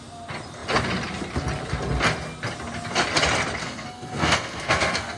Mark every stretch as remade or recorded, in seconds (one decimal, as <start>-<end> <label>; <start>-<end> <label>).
0.0-3.6 recorded; 3.6-5.2 remade